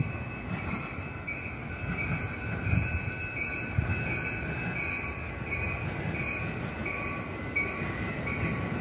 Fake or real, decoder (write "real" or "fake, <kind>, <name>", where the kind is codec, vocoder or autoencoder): real